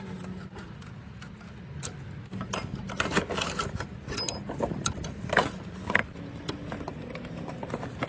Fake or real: real